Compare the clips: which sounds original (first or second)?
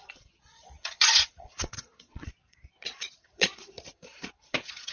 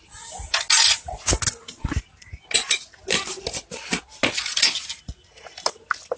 second